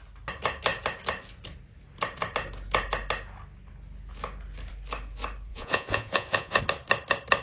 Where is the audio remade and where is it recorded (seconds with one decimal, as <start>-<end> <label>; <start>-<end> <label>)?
0.0-5.5 recorded; 5.5-6.6 remade; 6.6-7.4 recorded